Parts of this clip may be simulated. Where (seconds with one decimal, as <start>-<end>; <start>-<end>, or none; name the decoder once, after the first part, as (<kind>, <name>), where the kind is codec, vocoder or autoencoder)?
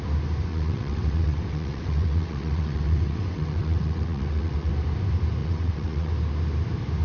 0.5-4.7 (vocoder, WaveNeXt); 5.4-6.1